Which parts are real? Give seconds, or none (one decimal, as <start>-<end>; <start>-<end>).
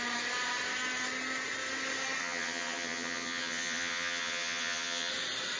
0.0-2.2; 5.1-5.6